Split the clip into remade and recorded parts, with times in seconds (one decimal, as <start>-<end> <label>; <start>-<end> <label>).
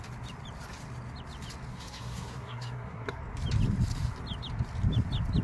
0.0-1.7 recorded; 1.7-3.2 remade; 3.2-5.4 recorded